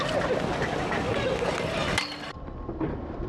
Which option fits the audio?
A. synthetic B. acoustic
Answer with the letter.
B